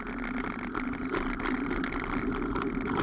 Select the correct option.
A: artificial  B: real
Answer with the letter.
B